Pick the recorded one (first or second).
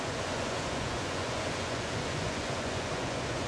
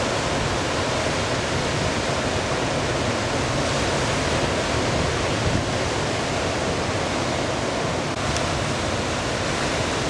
second